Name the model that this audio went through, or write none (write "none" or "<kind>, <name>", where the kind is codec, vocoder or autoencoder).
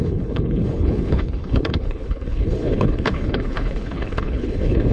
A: codec, HILCodec